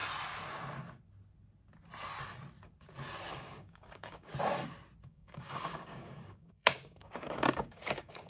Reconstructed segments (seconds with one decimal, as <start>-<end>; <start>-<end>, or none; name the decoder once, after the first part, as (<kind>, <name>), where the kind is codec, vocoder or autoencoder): 3.3-4.3 (codec, DAC); 5.1-8.3